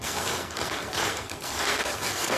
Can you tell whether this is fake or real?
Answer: fake